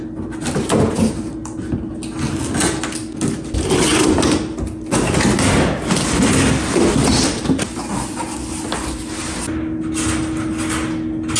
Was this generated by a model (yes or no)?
no